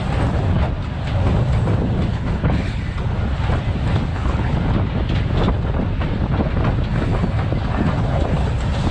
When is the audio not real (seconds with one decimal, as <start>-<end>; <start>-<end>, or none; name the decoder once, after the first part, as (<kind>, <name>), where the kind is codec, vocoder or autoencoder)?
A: 2.1-2.8 (codec, HILCodec); 4.1-4.6